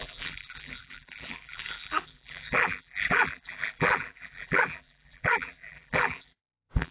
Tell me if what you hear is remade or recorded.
remade